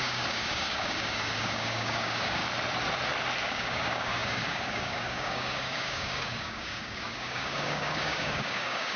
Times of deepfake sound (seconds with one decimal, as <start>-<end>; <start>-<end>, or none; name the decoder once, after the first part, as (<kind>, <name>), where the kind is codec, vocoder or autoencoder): 0.0-2.4 (codec, DAC); 3.4-9.0